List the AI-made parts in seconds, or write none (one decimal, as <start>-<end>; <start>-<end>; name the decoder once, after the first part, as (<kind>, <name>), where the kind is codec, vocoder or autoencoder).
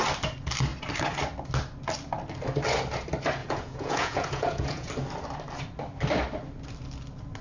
3.4-4.9 (vocoder, Vocos)